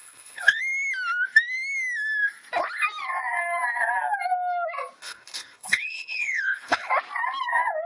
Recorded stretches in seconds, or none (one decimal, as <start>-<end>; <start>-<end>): 0.6-5.0; 6.9-7.9